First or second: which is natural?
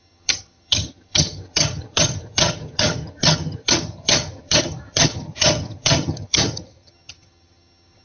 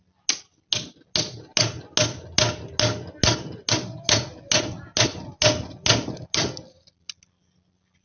second